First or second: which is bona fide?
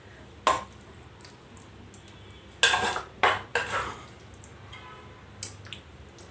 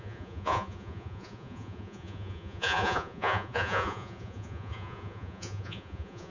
first